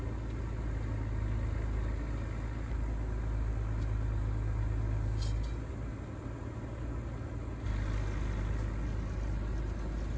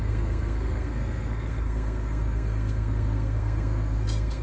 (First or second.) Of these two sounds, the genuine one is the first